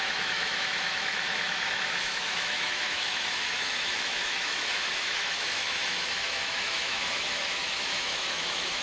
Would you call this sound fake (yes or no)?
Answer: yes